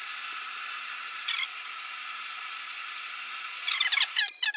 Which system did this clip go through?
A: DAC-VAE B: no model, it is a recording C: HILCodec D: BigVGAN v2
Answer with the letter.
B